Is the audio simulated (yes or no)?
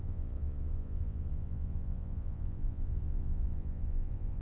yes